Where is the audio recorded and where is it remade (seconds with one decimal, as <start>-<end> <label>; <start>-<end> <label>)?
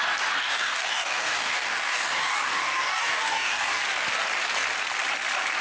0.0-0.4 recorded; 0.4-3.8 remade; 3.8-5.6 recorded